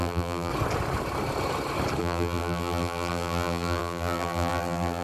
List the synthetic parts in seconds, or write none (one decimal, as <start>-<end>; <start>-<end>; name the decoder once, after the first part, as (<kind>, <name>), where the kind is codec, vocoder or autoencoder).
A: 0.0-0.5 (vocoder, BigVGAN v2); 2.0-5.0